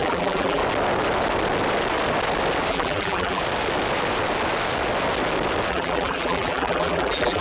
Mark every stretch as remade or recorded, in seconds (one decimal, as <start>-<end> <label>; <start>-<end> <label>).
0.0-0.6 remade; 0.6-2.7 recorded; 2.7-3.4 remade; 3.4-5.7 recorded; 5.7-7.4 remade